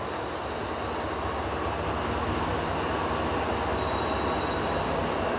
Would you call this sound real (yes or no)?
yes